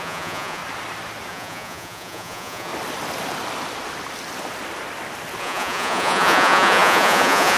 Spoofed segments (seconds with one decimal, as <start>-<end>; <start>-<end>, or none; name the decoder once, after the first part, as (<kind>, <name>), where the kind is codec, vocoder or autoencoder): 0.0-0.6 (vocoder, Vocos); 1.3-2.7; 5.4-7.6